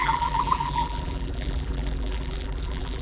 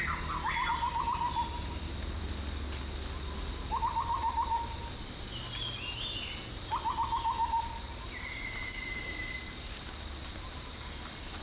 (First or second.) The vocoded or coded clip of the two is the first